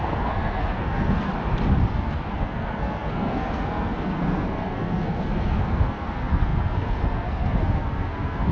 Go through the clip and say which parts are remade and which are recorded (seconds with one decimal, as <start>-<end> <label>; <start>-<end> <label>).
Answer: 0.0-1.3 remade; 1.3-1.9 recorded; 1.9-8.5 remade